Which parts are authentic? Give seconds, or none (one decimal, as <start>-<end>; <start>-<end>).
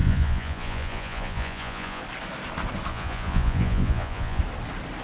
2.0-2.9; 4.4-5.0